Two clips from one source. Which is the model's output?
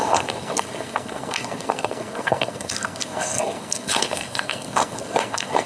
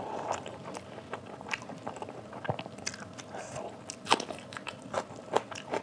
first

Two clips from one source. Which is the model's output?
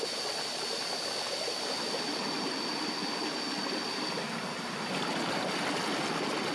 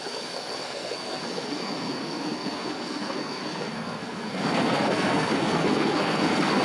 second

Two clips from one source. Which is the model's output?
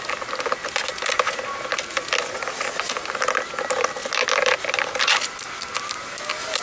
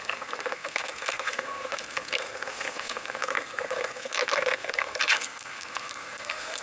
second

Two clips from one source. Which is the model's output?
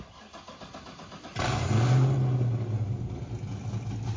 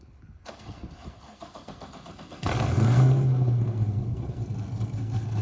second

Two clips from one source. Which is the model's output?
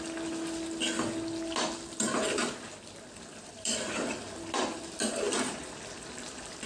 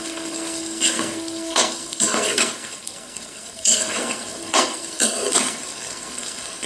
second